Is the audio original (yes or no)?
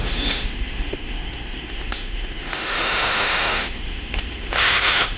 no